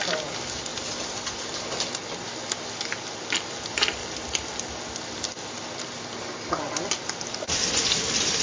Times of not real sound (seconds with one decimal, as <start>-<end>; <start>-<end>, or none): none